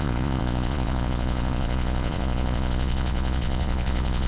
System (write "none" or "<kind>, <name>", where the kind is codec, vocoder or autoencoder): vocoder, Vocos